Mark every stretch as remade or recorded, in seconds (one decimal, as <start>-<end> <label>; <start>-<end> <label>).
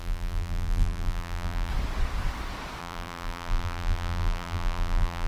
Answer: 0.0-1.7 remade; 1.7-2.8 recorded; 2.8-5.3 remade